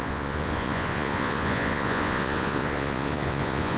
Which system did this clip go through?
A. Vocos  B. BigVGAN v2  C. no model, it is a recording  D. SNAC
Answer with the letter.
A